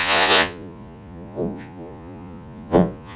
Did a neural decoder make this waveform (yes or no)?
yes